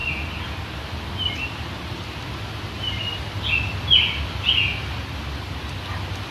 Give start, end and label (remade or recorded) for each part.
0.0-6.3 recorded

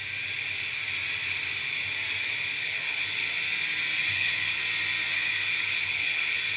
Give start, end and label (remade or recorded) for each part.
0.0-2.6 recorded; 2.6-3.2 remade; 3.2-4.1 recorded; 4.1-4.6 remade; 4.6-5.1 recorded; 5.1-6.6 remade

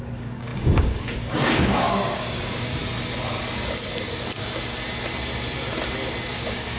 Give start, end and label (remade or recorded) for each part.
0.0-2.8 remade; 2.8-6.3 recorded; 6.3-6.8 remade

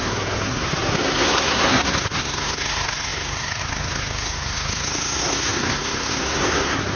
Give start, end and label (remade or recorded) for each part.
0.0-7.0 remade